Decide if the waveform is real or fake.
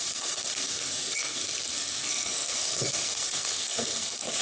fake